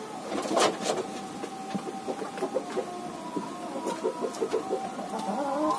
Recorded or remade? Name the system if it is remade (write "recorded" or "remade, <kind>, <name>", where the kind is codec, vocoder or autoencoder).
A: recorded